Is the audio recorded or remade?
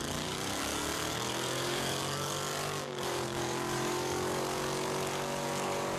remade